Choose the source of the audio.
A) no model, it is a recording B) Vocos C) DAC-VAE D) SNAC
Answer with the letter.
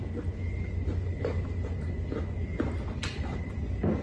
A